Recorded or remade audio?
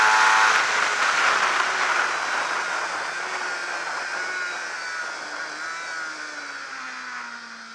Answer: recorded